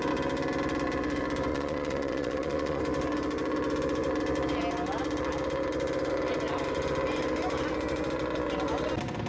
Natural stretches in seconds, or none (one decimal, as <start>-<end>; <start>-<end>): 0.0-1.5; 2.8-9.3